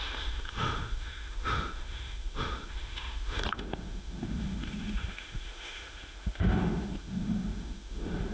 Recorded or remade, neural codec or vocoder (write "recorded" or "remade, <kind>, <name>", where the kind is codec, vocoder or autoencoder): remade, autoencoder, DAC-VAE